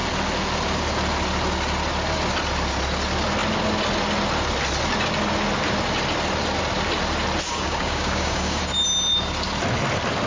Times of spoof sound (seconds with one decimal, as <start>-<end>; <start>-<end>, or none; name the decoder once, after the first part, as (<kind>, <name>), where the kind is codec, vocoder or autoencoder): 7.5-8.6 (codec, DAC)